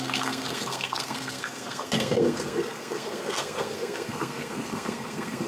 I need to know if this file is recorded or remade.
remade